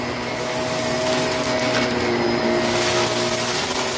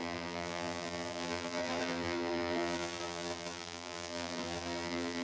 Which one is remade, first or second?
second